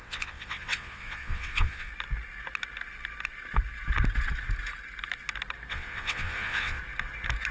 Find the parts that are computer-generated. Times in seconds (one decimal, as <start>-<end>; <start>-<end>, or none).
0.0-1.9; 5.7-6.8

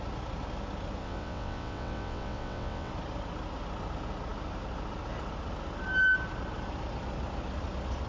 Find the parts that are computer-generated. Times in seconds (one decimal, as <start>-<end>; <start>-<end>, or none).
1.0-2.9

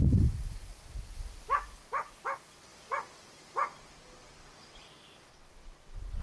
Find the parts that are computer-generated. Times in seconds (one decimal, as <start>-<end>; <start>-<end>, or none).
5.3-6.2